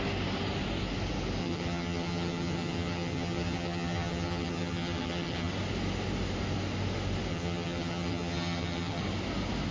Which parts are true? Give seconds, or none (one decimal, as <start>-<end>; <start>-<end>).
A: 0.0-1.4; 5.5-7.3; 9.0-9.7